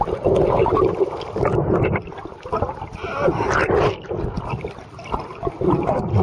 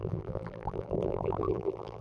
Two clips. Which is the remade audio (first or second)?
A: second